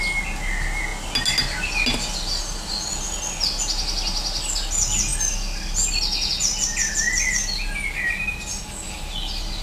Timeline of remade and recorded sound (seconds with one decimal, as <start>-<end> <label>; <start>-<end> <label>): 0.0-9.6 recorded